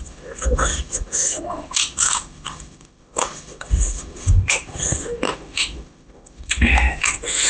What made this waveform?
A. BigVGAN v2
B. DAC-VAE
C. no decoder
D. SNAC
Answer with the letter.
B